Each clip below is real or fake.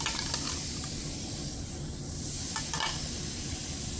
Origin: real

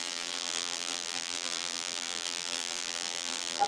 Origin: fake